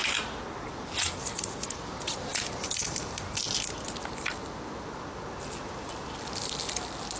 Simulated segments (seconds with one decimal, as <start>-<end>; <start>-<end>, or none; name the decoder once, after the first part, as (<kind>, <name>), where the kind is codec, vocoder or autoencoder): none